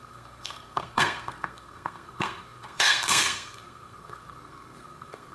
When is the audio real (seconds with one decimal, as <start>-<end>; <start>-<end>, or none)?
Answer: none

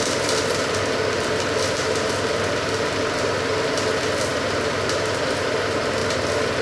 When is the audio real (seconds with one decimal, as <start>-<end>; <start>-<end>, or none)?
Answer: 0.0-6.6

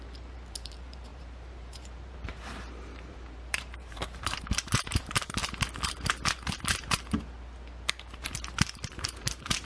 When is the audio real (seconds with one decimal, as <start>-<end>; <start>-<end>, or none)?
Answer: 5.4-8.9

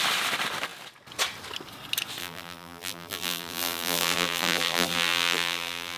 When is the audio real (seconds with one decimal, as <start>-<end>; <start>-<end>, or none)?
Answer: 0.0-2.2

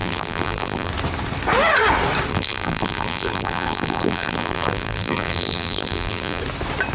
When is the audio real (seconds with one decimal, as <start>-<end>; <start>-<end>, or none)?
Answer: 0.9-2.3; 6.4-6.9

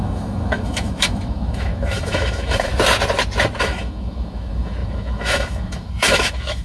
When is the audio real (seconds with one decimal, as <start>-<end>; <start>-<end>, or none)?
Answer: 2.7-3.6